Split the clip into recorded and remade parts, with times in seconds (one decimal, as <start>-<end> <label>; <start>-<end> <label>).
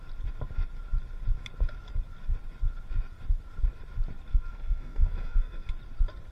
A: 0.0-4.3 recorded; 4.3-5.7 remade; 5.7-6.3 recorded